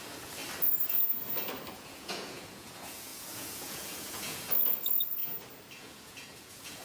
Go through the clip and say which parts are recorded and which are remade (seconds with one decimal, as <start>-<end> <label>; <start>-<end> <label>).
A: 0.0-0.4 remade; 0.4-1.7 recorded; 1.7-5.2 remade; 5.2-5.8 recorded; 5.8-6.8 remade